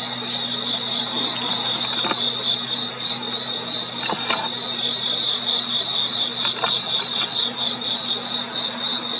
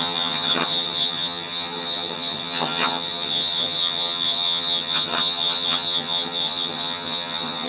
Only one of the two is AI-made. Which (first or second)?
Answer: second